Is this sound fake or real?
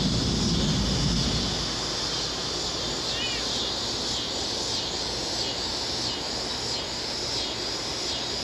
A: real